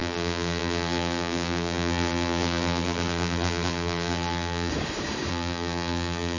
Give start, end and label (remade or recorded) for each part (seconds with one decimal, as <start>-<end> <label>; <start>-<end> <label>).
0.0-4.7 remade; 4.7-5.3 recorded; 5.3-6.4 remade